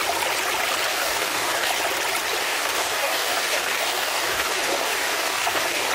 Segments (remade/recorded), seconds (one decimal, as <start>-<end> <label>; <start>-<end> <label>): 0.0-0.9 recorded; 0.9-1.7 remade; 1.7-2.4 recorded; 2.4-5.9 remade